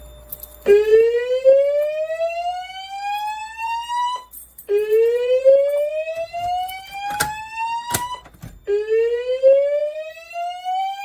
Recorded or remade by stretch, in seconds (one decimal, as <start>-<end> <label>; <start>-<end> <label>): 0.0-3.4 recorded; 3.4-5.9 remade; 5.9-9.8 recorded; 9.8-11.0 remade